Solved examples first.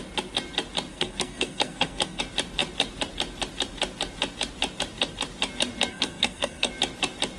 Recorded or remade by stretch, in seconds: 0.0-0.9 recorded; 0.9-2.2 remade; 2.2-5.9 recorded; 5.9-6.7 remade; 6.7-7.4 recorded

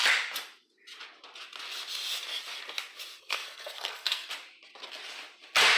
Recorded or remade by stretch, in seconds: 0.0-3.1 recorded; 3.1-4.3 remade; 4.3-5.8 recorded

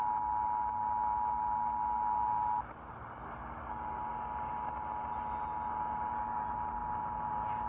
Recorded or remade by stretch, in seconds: 0.0-7.7 recorded